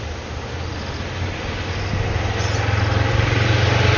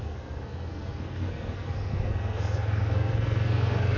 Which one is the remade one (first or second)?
second